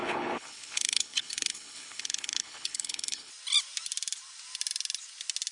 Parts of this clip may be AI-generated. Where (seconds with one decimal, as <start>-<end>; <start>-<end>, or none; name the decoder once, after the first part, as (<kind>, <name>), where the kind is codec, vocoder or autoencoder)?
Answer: 0.0-3.3 (codec, HILCodec)